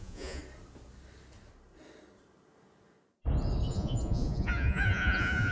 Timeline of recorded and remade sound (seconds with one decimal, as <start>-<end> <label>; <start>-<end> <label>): 0.0-0.4 remade; 0.4-3.7 recorded; 3.7-5.5 remade